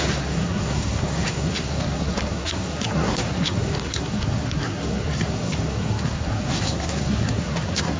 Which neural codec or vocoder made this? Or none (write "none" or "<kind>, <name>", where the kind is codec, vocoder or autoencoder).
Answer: codec, SNAC